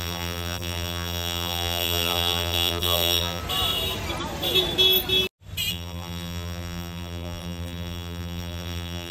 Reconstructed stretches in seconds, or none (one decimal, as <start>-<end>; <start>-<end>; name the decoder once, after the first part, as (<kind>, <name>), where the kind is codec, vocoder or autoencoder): 0.0-3.4 (vocoder, BigVGAN v2); 5.7-9.1